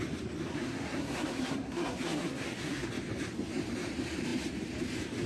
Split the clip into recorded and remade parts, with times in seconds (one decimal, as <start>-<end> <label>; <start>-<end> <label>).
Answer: 0.0-0.5 recorded; 0.5-2.9 remade; 2.9-5.3 recorded